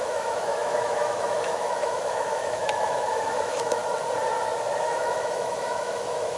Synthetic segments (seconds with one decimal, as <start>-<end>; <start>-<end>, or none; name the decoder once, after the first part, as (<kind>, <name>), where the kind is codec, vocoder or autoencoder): 0.0-3.8 (autoencoder, DAC-VAE); 4.8-6.4